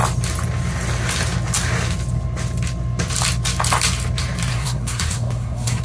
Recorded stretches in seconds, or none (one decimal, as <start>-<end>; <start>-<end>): 0.0-4.5